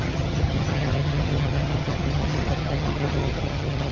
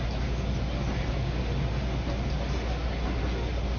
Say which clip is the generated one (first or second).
first